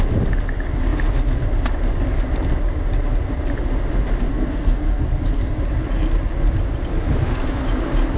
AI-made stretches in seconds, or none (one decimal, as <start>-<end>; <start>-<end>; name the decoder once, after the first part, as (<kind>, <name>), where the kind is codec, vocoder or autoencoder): 4.3-5.0 (codec, SNAC)